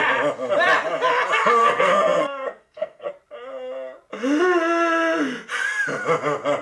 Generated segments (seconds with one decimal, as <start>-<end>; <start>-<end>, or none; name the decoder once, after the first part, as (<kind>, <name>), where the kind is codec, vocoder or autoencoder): 1.6-3.1 (codec, SNAC)